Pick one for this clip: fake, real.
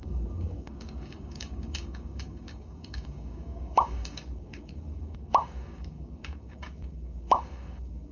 fake